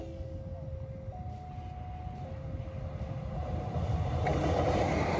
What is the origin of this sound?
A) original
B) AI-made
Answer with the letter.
A